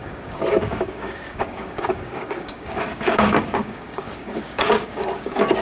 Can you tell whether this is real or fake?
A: fake